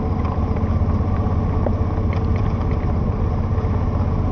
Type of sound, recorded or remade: recorded